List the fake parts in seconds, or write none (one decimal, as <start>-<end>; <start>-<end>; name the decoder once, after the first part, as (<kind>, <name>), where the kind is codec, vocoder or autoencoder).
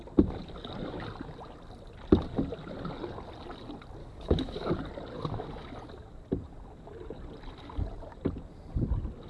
4.0-4.7 (codec, DAC)